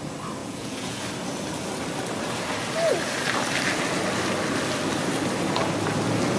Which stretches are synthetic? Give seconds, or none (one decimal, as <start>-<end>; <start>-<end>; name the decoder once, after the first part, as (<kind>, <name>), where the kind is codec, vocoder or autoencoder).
0.4-1.0 (vocoder, Vocos)